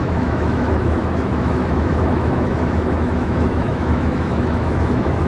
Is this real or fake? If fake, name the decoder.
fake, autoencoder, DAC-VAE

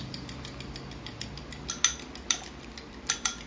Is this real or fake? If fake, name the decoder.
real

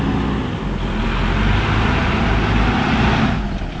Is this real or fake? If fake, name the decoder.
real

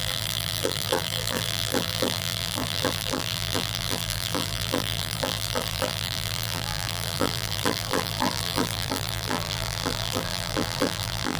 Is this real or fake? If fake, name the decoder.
fake, vocoder, BigVGAN v2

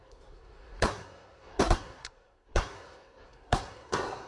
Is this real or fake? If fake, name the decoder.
fake, codec, SNAC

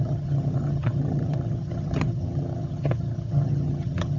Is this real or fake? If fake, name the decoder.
fake, vocoder, HiFi-GAN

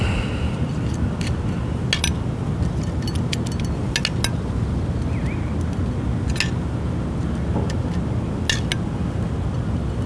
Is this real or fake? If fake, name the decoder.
real